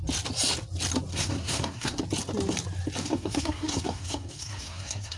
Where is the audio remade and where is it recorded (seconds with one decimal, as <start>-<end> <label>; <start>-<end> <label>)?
0.0-1.1 recorded; 1.1-2.0 remade; 2.0-3.0 recorded; 3.0-5.2 remade